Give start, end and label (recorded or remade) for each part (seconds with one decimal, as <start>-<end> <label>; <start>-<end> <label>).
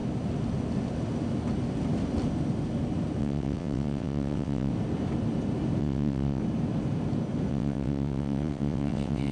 0.0-3.2 recorded; 3.2-4.7 remade; 4.7-5.8 recorded; 5.8-6.4 remade; 6.4-7.5 recorded; 7.5-9.3 remade